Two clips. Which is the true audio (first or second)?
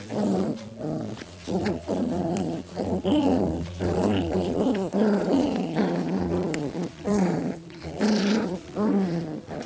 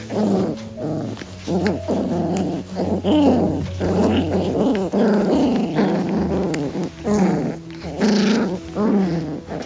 second